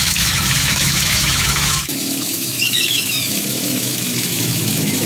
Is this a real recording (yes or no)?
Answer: no